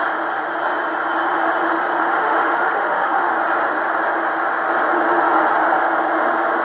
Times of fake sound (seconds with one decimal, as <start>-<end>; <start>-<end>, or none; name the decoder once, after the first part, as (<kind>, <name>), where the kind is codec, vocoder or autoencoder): 2.0-3.3 (autoencoder, DAC-VAE)